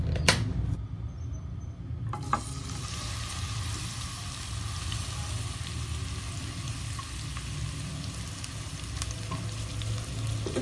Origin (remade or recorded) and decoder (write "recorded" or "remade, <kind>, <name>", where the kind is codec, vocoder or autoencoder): recorded